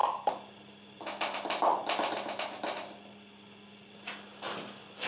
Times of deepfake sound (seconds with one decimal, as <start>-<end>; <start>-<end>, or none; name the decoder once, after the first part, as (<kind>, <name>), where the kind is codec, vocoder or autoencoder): none

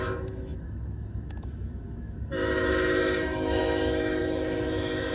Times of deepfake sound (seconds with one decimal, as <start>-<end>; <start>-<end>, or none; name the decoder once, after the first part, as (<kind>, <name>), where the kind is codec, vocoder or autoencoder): 0.0-5.1 (autoencoder, DAC-VAE)

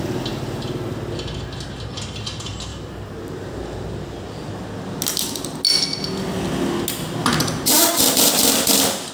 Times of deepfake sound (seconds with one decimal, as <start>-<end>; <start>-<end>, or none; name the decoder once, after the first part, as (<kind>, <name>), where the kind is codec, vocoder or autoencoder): 2.7-4.5 (vocoder, BigVGAN v2); 7.2-7.9